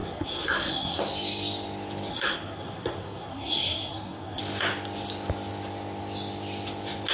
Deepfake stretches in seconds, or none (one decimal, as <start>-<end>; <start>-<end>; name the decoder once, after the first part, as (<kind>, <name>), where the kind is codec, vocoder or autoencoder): 0.0-1.0 (codec, SNAC); 2.1-4.4

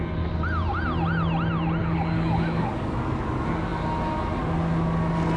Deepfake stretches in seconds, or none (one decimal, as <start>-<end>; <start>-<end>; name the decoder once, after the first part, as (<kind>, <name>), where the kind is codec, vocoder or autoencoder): 1.8-3.3 (codec, DAC)

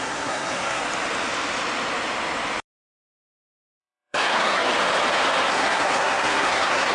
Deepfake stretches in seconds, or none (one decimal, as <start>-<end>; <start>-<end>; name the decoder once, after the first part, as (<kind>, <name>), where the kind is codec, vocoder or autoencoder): 0.0-0.8 (codec, SNAC); 3.8-4.7; 5.5-6.9

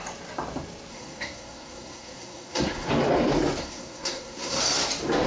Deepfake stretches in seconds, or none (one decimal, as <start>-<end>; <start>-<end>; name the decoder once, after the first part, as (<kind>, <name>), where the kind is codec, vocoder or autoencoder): 0.9-2.9 (codec, SNAC); 3.6-4.6

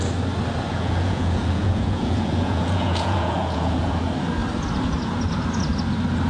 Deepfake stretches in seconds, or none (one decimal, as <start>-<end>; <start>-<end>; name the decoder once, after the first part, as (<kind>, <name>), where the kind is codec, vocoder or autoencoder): 0.7-4.0 (vocoder, Vocos)